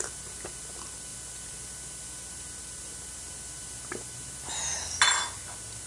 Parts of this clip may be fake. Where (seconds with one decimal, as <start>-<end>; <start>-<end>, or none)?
none